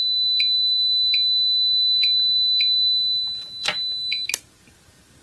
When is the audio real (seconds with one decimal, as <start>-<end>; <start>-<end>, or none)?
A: 0.0-5.2